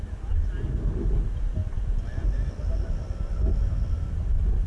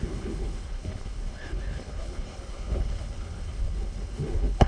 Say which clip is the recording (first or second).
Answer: first